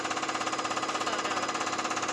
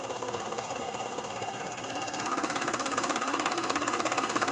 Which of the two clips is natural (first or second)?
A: first